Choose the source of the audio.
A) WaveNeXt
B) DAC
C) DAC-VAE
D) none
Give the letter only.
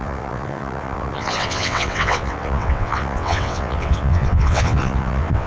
A